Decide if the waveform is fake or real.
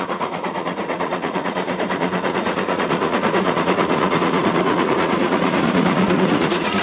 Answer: fake